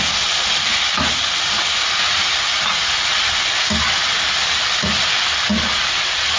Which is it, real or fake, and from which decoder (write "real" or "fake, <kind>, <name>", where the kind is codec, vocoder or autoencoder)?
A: real